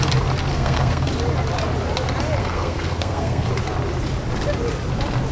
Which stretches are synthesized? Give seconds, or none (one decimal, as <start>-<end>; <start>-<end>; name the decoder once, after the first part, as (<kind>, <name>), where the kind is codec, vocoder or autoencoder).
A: 0.5-1.1 (codec, SNAC); 2.4-3.5